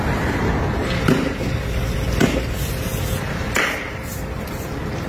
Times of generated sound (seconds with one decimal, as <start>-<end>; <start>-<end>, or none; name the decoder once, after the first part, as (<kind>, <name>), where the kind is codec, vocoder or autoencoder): none